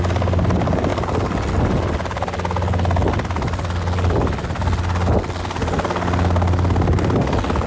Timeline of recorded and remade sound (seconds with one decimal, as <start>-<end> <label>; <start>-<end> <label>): 0.0-7.7 recorded